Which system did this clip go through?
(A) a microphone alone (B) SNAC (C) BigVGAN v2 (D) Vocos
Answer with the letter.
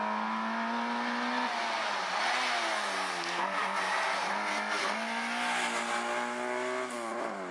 A